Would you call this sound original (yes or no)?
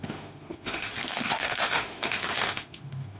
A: no